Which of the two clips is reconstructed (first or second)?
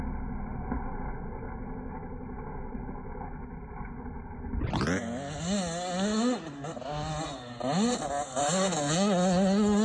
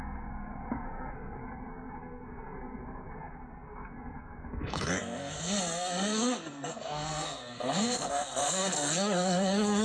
second